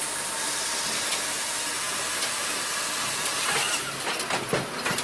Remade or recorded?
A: remade